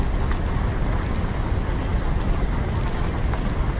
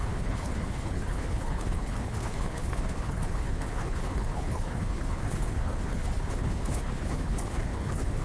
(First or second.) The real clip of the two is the first